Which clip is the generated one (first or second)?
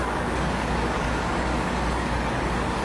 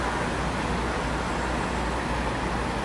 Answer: first